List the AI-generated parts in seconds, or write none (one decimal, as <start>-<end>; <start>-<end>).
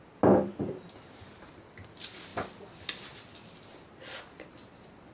none